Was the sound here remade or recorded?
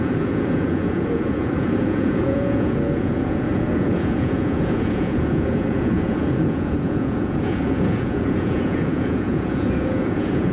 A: remade